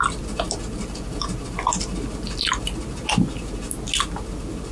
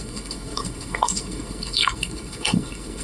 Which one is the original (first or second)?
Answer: first